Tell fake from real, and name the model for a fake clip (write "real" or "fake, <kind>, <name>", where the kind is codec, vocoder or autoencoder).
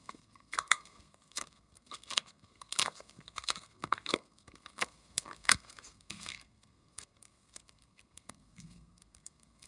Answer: fake, codec, SNAC